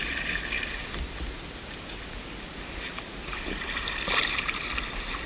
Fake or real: real